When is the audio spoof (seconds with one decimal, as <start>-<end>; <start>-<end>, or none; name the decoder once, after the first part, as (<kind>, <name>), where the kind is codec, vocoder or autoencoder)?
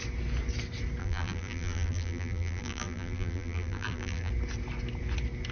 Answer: 1.0-4.3 (vocoder, BigVGAN v2)